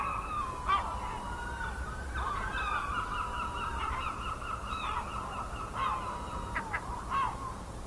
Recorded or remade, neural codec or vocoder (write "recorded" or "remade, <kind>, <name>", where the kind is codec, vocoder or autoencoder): remade, vocoder, BigVGAN v2